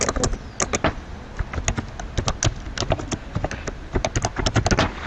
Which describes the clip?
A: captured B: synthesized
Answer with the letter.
A